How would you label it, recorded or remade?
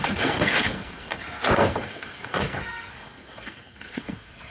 remade